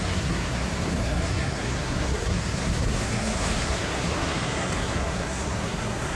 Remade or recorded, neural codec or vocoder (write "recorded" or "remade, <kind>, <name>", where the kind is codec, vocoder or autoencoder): remade, codec, SNAC